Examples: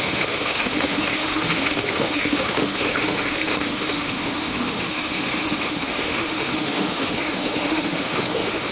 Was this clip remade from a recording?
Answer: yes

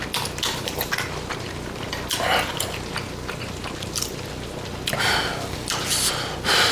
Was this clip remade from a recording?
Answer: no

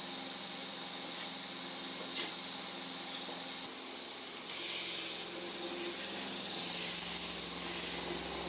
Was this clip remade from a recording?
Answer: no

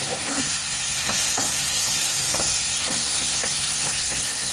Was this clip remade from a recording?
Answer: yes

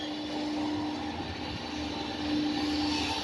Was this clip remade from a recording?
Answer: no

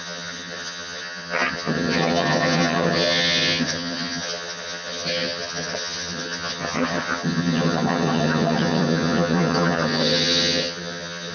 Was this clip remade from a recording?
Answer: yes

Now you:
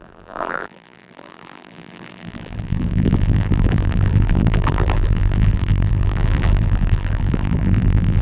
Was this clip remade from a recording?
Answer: yes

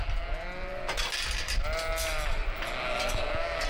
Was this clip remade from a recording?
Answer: no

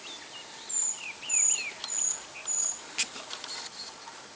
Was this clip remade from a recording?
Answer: no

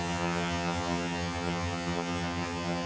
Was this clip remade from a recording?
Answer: yes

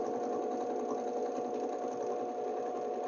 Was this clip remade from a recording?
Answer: no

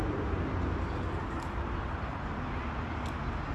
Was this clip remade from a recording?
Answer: no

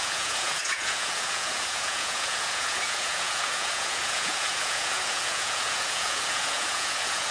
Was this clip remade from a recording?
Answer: yes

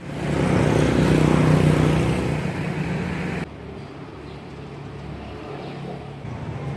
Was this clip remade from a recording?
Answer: no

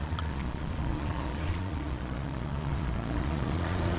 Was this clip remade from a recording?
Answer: yes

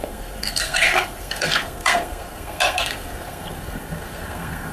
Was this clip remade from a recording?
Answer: yes